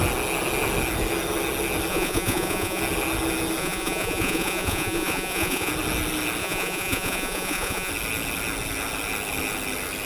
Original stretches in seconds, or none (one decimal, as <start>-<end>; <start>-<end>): 0.0-1.9; 2.8-3.6; 5.7-6.4; 7.9-10.1